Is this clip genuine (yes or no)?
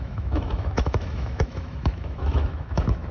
no